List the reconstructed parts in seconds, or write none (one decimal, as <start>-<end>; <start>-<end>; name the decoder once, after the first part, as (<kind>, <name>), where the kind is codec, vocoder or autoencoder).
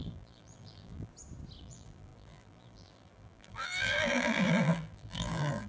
0.0-1.1 (vocoder, BigVGAN v2); 1.6-5.7